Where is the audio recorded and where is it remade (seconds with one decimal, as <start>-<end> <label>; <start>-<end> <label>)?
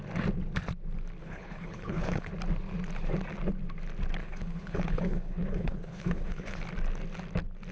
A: 0.0-1.2 recorded; 1.2-2.3 remade; 2.3-4.2 recorded; 4.2-6.6 remade; 6.6-7.7 recorded